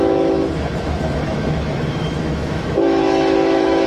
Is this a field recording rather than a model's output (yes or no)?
no